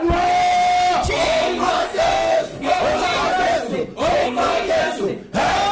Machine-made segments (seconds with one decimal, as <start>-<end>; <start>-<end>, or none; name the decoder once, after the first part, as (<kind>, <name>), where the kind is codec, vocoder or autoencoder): 1.1-2.8 (codec, SNAC); 4.2-4.7

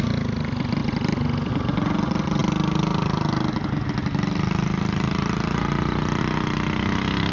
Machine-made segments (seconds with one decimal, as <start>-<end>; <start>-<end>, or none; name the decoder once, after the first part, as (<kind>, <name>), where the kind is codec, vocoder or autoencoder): 0.8-1.5 (vocoder, BigVGAN v2)

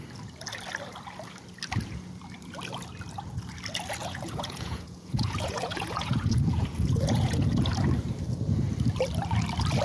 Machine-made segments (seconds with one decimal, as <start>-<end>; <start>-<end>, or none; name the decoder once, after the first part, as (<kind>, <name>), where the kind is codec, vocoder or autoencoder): 4.0-7.7 (vocoder, Vocos)

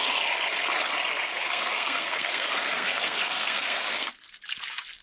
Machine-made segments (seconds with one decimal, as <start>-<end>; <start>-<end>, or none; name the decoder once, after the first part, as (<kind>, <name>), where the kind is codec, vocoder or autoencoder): 1.3-4.3 (codec, SNAC)

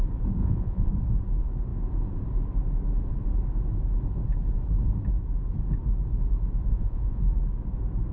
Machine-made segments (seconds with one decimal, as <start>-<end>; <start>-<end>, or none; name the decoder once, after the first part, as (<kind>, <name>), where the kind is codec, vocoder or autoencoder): 0.4-0.9 (vocoder, Vocos); 6.7-7.2